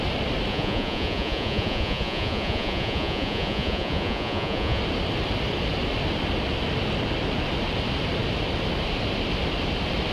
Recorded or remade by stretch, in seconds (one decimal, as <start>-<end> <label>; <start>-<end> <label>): 0.0-0.5 recorded; 0.5-4.8 remade; 4.8-10.1 recorded